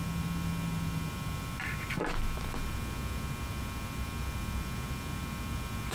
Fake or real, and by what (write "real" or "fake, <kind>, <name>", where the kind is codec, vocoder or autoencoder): real